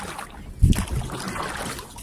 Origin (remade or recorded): recorded